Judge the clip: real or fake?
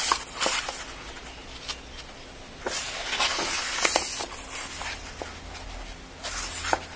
real